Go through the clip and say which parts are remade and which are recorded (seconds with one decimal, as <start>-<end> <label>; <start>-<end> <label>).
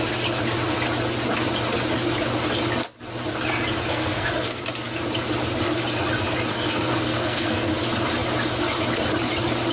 0.0-3.9 recorded; 3.9-4.6 remade; 4.6-6.5 recorded; 6.5-7.7 remade; 7.7-9.7 recorded